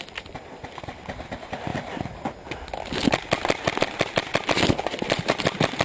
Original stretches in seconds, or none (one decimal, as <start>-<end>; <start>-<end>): none